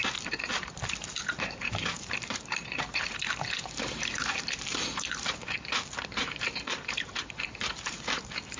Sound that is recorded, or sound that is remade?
remade